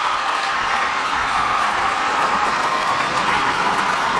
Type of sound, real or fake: fake